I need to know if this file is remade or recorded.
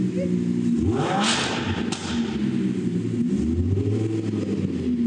recorded